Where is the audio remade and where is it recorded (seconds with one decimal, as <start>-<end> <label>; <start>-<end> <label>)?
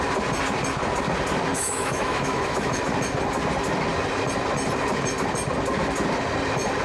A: 0.0-1.5 recorded; 1.5-2.8 remade; 2.8-6.8 recorded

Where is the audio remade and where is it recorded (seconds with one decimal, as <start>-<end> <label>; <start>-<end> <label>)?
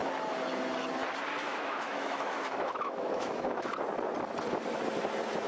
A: 0.0-1.5 recorded; 1.5-3.8 remade; 3.8-5.5 recorded